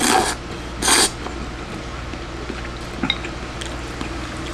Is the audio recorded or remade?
recorded